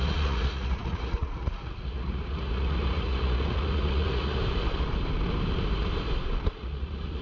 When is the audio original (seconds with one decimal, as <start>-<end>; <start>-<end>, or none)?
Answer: 4.4-6.5